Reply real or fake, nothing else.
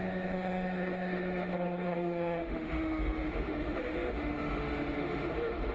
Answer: fake